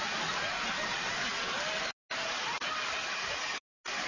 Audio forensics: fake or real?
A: real